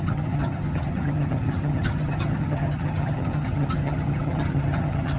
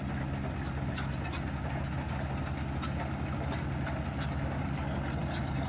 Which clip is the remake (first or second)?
first